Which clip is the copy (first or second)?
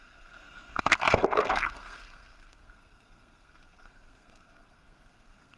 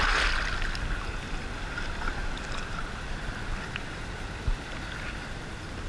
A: first